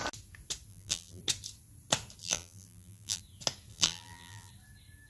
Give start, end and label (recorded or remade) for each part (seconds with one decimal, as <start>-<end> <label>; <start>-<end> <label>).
0.0-0.7 recorded; 0.7-1.2 remade; 1.2-2.2 recorded; 2.2-3.2 remade; 3.2-3.7 recorded; 3.7-4.5 remade; 4.5-5.1 recorded